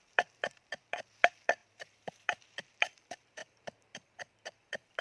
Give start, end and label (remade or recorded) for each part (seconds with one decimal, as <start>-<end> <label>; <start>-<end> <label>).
0.0-5.0 remade